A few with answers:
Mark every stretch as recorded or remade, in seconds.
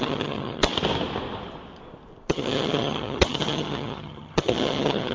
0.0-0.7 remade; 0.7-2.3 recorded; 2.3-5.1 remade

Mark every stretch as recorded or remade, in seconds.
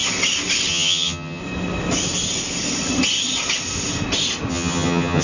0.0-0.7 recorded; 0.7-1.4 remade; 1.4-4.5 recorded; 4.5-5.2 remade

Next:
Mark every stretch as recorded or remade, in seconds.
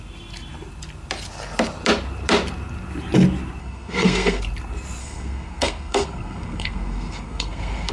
0.0-3.6 recorded; 3.6-4.4 remade; 4.4-5.0 recorded; 5.0-7.9 remade